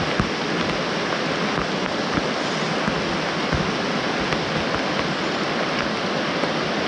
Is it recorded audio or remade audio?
recorded